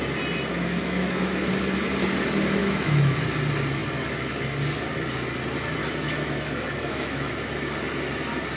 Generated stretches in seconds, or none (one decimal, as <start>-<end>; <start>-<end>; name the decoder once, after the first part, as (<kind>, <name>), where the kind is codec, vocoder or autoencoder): 0.5-1.5 (autoencoder, DAC-VAE); 2.6-3.2; 5.8-7.3

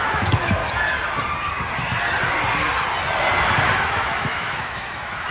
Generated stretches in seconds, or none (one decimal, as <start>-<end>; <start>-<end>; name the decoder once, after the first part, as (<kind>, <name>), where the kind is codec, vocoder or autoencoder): 0.0-0.6 (autoencoder, DAC-VAE); 3.8-5.3

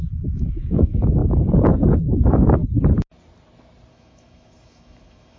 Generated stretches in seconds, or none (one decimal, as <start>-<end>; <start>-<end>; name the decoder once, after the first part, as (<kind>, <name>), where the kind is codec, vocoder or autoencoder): 0.0-1.2 (autoencoder, DAC-VAE); 2.2-2.6; 3.9-5.4